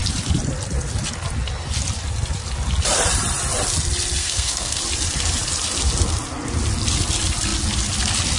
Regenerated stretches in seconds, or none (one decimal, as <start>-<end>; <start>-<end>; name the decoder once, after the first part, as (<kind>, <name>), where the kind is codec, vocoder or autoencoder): 4.2-4.8 (codec, SNAC)